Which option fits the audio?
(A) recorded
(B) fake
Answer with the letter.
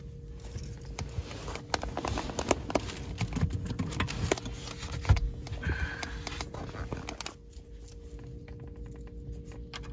A